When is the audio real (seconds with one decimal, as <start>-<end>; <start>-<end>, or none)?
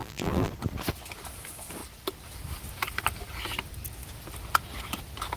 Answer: 0.5-5.4